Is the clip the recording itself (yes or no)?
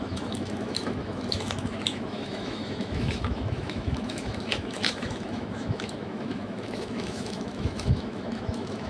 no